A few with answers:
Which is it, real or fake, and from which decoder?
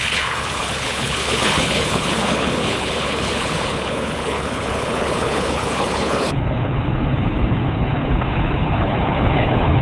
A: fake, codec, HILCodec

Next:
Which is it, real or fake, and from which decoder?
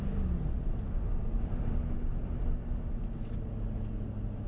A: real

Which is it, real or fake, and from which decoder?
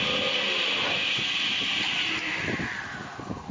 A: real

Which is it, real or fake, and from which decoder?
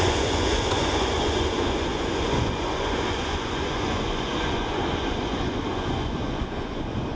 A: fake, vocoder, Vocos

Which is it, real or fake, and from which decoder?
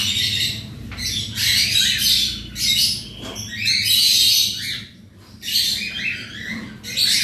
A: real